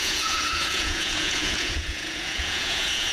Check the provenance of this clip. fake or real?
fake